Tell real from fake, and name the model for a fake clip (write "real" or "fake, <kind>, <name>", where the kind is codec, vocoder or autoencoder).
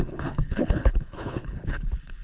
fake, codec, HILCodec